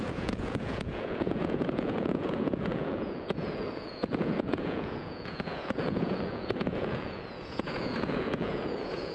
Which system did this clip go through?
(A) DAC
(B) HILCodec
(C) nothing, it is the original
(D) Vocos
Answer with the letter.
D